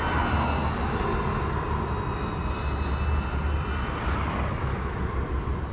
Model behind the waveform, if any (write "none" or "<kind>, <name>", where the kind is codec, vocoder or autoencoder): none